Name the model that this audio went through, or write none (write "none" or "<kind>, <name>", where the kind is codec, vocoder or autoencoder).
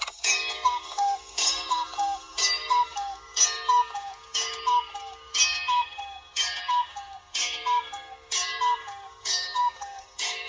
codec, DAC